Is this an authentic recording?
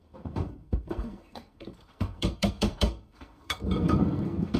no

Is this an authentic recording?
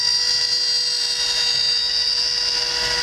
yes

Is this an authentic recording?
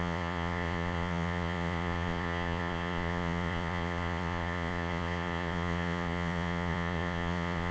no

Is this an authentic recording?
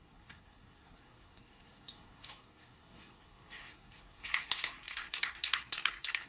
no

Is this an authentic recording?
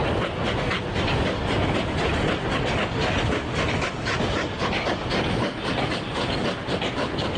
yes